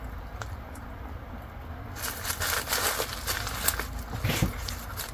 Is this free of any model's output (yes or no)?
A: yes